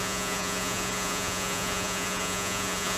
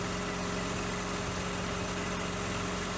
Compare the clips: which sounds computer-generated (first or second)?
first